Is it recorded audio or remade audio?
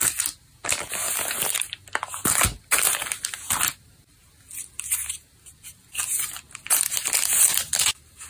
recorded